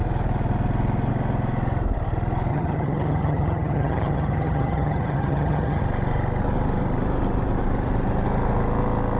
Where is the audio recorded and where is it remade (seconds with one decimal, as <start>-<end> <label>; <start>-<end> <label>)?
0.0-2.5 recorded; 2.5-5.8 remade; 5.8-9.2 recorded